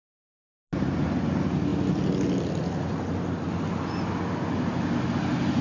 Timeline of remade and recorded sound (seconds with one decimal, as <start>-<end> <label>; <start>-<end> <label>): 0.0-5.6 recorded